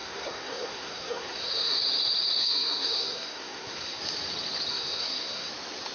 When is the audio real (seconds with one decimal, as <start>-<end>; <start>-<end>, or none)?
1.8-2.4; 4.0-4.7; 5.5-5.9